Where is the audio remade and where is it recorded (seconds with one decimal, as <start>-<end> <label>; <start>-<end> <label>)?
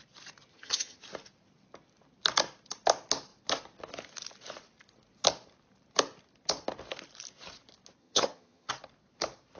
0.0-0.5 recorded; 0.5-1.0 remade; 1.0-8.0 recorded; 8.0-8.7 remade; 8.7-9.6 recorded